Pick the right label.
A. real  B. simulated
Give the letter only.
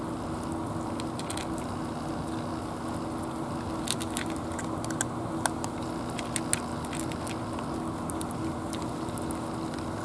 A